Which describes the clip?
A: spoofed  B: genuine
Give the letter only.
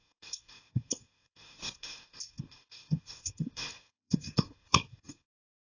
A